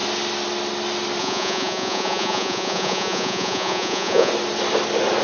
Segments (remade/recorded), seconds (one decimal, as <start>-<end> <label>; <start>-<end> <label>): 0.0-1.2 recorded; 1.2-4.3 remade; 4.3-5.2 recorded